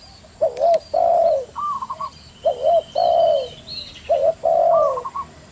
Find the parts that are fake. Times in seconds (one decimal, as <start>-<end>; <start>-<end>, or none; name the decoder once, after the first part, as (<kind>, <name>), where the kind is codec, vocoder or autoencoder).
1.1-2.3 (vocoder, BigVGAN v2)

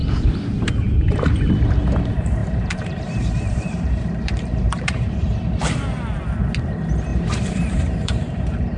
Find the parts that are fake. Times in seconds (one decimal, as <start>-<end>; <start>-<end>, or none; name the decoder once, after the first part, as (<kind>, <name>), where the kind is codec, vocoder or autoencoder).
2.4-5.6 (vocoder, BigVGAN v2); 7.1-8.8

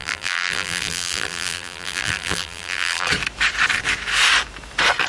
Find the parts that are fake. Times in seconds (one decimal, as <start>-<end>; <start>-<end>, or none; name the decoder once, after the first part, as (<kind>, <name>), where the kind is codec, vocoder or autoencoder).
0.0-3.1 (vocoder, BigVGAN v2)

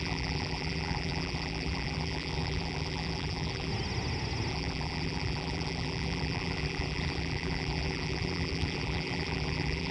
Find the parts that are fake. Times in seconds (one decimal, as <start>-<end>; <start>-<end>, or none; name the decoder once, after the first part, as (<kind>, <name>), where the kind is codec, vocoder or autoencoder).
0.0-3.7 (vocoder, BigVGAN v2); 4.5-9.9

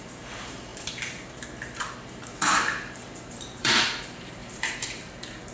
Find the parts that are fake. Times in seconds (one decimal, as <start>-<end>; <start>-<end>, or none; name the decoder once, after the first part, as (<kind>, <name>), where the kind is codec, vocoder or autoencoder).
0.0-5.5 (vocoder, BigVGAN v2)

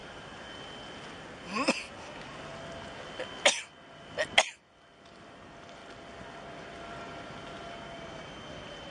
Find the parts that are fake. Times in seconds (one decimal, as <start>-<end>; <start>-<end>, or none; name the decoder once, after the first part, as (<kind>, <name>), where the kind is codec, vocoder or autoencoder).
0.0-0.6 (vocoder, BigVGAN v2)